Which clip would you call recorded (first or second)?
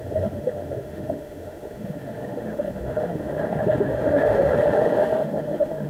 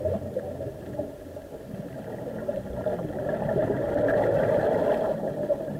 second